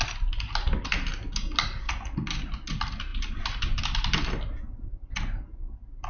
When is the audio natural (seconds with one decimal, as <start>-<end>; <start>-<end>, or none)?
0.0-6.1